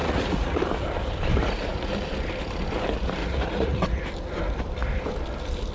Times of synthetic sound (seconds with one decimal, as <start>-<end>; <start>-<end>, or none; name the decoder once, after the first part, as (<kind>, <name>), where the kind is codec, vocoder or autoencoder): 0.0-0.6 (vocoder, Vocos); 1.3-1.9; 3.2-4.1